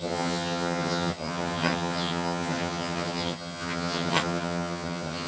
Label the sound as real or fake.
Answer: fake